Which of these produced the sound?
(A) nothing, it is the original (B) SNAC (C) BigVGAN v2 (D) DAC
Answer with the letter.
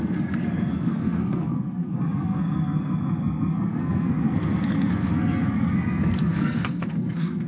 B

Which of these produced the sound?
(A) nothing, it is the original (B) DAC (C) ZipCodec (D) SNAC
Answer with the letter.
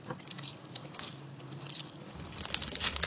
A